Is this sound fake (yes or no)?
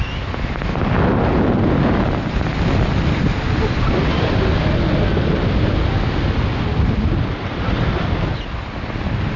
no